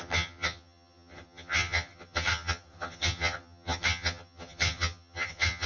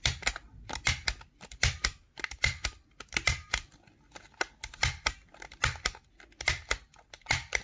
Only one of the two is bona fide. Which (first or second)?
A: second